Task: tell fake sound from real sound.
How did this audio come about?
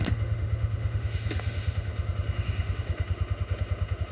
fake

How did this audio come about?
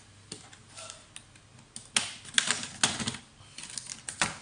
real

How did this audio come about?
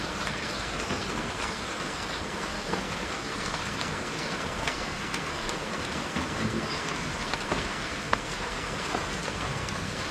fake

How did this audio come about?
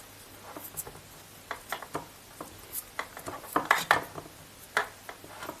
real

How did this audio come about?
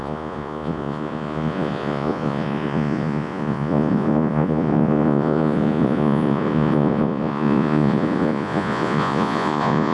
fake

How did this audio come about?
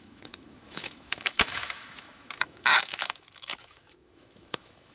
fake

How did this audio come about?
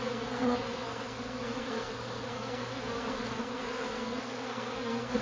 fake